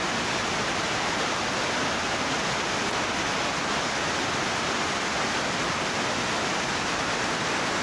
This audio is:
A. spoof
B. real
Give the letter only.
B